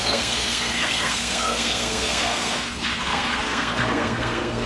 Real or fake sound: fake